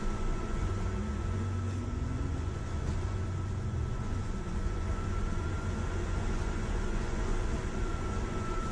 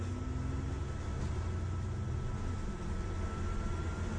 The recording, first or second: second